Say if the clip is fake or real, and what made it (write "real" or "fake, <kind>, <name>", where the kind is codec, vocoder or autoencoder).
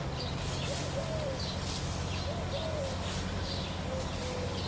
real